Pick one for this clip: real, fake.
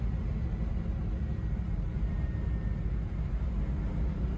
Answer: real